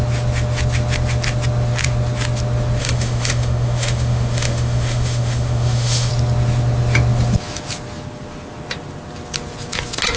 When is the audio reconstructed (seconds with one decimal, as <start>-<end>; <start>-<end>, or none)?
2.8-6.1